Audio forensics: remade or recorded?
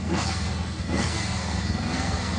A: remade